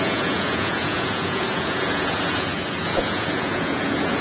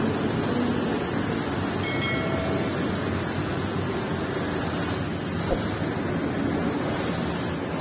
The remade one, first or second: first